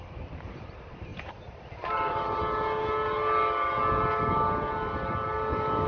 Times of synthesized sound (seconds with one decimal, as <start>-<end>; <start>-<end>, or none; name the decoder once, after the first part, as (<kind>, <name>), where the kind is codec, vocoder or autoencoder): 1.1-2.2 (vocoder, BigVGAN v2)